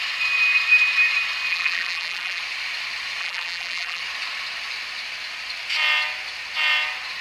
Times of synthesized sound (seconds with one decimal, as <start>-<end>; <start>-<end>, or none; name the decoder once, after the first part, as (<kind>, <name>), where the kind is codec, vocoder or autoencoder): 1.5-2.4 (vocoder, BigVGAN v2); 3.2-4.0

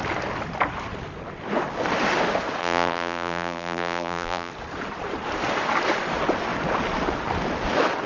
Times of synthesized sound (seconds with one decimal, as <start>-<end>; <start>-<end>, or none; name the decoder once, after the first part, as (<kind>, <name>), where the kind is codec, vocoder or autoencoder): 2.6-4.5 (vocoder, BigVGAN v2)

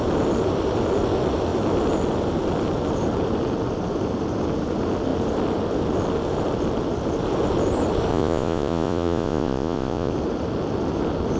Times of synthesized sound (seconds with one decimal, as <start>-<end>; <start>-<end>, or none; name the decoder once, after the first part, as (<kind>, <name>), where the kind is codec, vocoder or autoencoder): 8.1-10.1 (vocoder, Vocos)

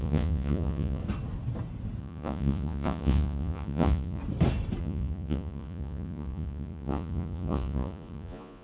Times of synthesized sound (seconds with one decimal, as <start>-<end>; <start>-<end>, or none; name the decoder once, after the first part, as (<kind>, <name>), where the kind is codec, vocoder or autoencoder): 0.0-1.0 (vocoder, Vocos); 2.0-4.2; 4.8-8.6

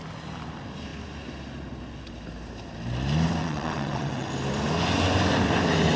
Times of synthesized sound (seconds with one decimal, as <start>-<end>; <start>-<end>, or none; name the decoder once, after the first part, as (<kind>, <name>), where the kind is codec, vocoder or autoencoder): 3.4-4.3 (vocoder, WaveNeXt)

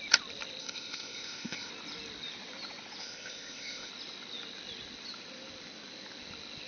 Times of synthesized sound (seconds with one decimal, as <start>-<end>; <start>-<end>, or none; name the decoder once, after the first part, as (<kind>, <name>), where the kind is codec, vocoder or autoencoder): 0.6-1.7 (codec, ZipCodec); 3.0-3.9

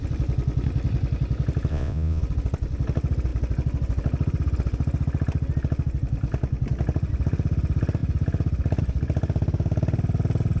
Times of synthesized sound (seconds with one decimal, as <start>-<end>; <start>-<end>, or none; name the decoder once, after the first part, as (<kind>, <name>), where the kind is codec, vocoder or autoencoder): 1.7-2.2 (vocoder, Vocos)